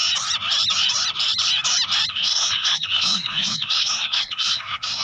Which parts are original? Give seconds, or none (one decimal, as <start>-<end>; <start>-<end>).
0.0-2.1